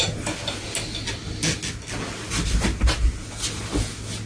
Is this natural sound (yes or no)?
yes